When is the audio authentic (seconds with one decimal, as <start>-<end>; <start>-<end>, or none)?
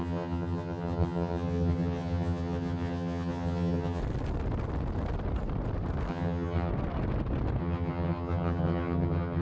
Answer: 4.0-6.1; 6.7-7.6